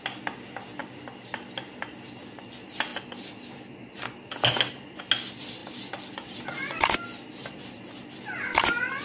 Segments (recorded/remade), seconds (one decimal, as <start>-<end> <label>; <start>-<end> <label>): 0.0-9.0 recorded